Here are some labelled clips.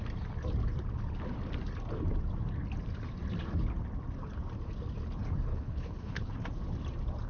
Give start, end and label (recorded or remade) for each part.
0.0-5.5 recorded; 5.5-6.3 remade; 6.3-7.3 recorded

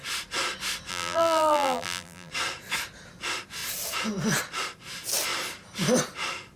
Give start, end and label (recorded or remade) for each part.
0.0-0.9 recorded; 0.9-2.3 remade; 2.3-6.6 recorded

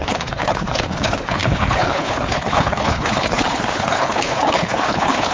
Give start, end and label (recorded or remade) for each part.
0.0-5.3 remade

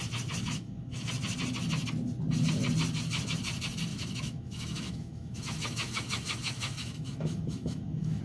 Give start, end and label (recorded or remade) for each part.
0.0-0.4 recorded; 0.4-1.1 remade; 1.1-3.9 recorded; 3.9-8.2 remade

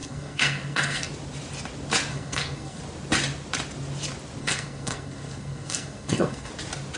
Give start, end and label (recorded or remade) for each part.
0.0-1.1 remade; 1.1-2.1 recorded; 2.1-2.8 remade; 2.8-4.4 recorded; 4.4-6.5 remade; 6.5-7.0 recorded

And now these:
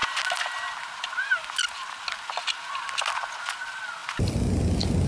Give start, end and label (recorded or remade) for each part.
0.0-5.1 recorded

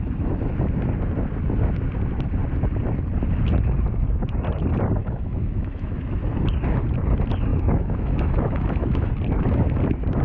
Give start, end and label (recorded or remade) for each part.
0.0-5.0 recorded; 5.0-6.0 remade; 6.0-7.5 recorded; 7.5-9.1 remade; 9.1-10.2 recorded